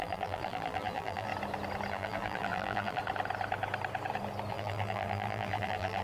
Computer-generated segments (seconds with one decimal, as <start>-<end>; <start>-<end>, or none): 0.0-1.3; 1.9-3.0; 4.5-6.0